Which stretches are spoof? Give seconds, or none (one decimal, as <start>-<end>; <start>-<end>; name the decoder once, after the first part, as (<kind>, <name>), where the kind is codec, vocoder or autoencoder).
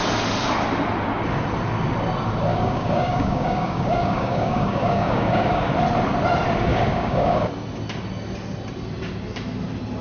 2.5-5.7 (codec, DAC); 6.7-7.5